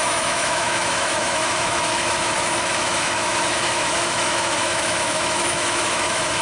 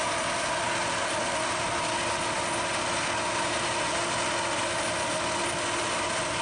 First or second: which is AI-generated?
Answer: first